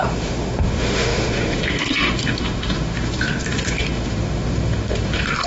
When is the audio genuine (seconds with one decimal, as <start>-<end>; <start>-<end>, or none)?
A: none